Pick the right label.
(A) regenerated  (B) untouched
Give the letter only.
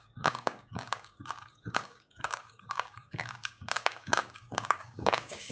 A